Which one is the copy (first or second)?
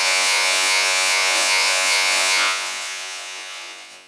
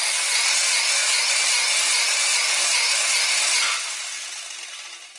first